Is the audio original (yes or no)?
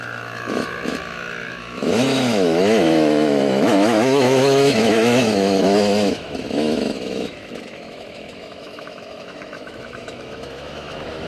no